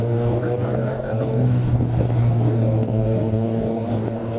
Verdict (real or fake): fake